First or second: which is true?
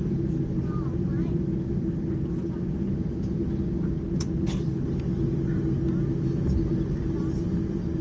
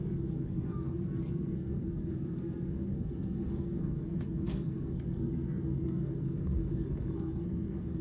first